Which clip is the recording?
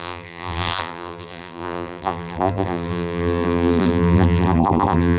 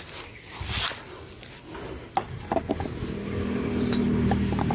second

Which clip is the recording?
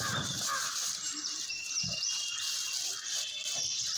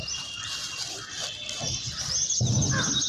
second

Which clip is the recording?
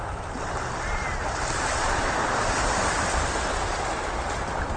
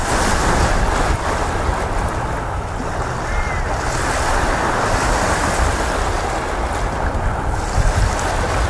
second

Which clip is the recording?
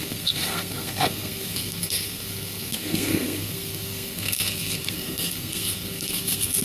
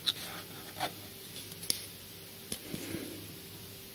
second